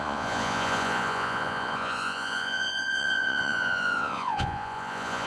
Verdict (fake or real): fake